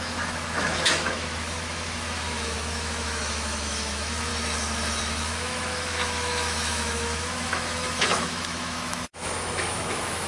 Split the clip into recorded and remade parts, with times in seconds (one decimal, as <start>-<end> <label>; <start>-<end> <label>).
0.0-4.3 remade; 4.3-5.0 recorded; 5.0-10.3 remade